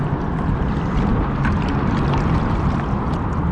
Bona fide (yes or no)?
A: yes